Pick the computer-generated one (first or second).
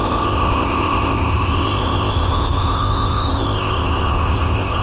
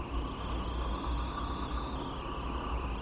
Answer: first